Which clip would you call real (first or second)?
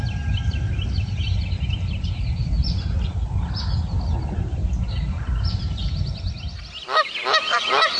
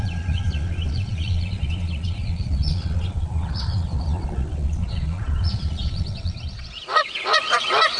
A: first